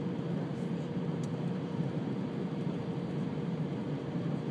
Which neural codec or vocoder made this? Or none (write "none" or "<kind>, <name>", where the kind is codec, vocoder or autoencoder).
vocoder, BigVGAN v2